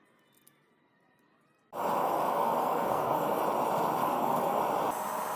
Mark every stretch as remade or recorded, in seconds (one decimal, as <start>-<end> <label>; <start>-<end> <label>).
0.0-2.0 recorded; 2.0-3.4 remade; 3.4-4.0 recorded; 4.0-4.6 remade; 4.6-5.4 recorded

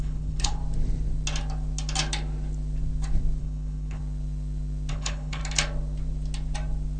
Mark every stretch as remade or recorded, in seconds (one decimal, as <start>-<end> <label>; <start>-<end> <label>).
0.0-0.6 remade; 0.6-3.4 recorded; 3.4-4.0 remade; 4.0-4.9 recorded; 4.9-5.4 remade; 5.4-7.0 recorded

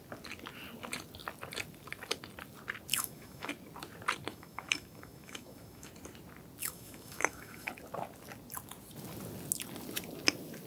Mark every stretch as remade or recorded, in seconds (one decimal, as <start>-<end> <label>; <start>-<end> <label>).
0.0-2.9 recorded; 2.9-3.5 remade; 3.5-4.3 recorded; 4.3-5.9 remade; 5.9-6.6 recorded; 6.6-7.7 remade; 7.7-10.7 recorded

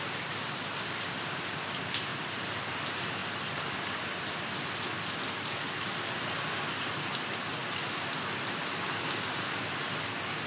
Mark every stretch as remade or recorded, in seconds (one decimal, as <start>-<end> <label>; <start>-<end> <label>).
0.0-10.5 recorded

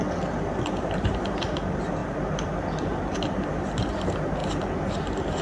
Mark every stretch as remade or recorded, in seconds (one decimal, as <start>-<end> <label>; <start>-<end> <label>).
0.0-4.4 remade; 4.4-4.9 recorded; 4.9-5.4 remade

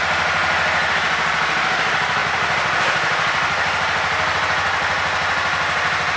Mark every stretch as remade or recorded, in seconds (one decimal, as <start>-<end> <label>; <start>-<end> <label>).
0.0-6.2 recorded